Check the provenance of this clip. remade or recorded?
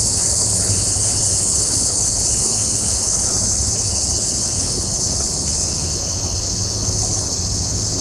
remade